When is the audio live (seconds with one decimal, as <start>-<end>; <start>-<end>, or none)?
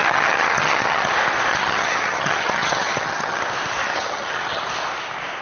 1.1-1.5; 3.4-3.8; 4.6-5.4